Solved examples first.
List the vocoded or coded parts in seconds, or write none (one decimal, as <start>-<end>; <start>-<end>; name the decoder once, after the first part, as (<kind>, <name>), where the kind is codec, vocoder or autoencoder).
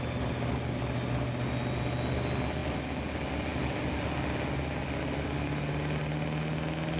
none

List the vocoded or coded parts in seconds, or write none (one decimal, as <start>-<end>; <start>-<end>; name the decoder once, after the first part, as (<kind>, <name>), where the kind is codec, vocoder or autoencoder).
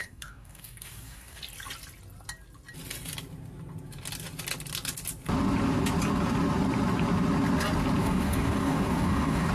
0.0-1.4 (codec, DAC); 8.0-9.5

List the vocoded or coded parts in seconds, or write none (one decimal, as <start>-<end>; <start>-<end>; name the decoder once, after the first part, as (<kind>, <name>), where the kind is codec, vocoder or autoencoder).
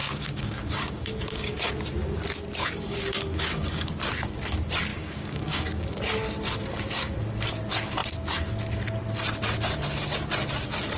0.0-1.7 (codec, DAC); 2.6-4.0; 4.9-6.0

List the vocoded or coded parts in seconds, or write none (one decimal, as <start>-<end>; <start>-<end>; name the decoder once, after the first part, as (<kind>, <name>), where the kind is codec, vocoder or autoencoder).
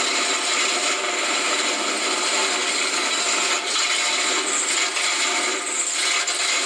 2.6-3.2 (codec, DAC)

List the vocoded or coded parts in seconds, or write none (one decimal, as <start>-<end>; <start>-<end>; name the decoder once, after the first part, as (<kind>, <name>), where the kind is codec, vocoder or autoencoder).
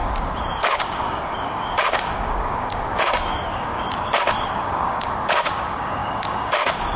0.0-7.0 (codec, DAC)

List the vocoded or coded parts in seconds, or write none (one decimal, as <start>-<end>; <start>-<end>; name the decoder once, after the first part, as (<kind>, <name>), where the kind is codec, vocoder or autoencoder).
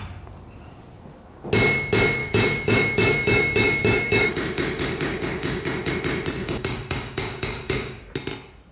2.2-5.9 (codec, DAC); 6.4-8.1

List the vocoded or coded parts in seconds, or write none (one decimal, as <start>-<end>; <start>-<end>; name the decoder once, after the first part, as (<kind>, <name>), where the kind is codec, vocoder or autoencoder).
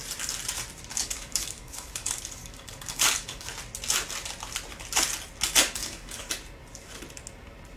0.9-3.5 (codec, DAC); 5.8-6.3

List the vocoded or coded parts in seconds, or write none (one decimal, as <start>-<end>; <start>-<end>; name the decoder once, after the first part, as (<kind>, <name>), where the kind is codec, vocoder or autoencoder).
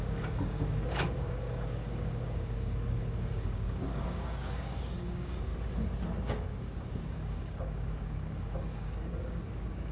0.0-5.5 (codec, DAC); 6.3-9.9